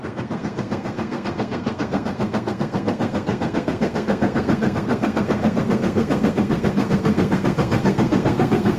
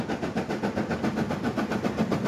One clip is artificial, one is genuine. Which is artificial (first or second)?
first